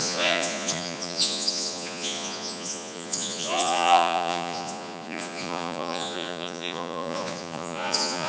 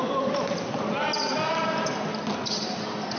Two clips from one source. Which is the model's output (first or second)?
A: first